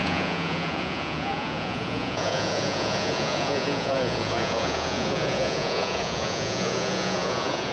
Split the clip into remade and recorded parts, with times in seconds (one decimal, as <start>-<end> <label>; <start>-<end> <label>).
0.0-7.7 remade